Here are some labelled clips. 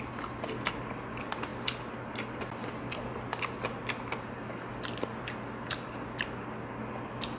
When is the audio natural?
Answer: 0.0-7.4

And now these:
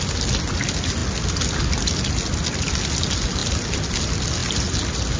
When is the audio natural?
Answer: 0.0-5.2

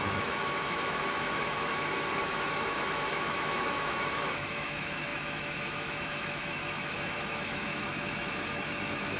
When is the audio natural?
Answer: none

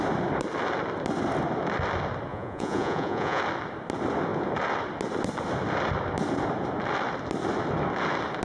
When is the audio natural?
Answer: 0.0-2.3; 3.4-8.4

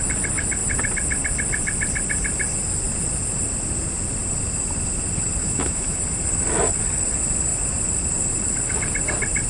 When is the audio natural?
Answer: 0.0-5.4; 6.0-9.5

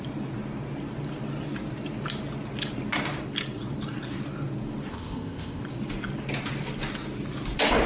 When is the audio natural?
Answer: 0.0-4.9; 5.6-7.9

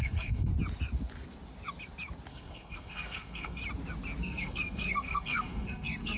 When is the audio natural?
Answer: 0.5-2.3; 3.6-4.2